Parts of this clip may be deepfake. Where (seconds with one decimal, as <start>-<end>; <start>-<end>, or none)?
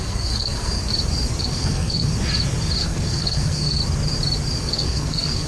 0.0-0.9; 1.4-2.1; 2.8-3.8; 4.6-5.5